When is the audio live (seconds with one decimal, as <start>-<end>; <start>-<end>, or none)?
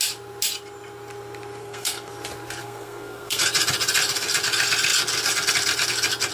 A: 0.0-1.6; 2.1-2.6; 3.4-6.3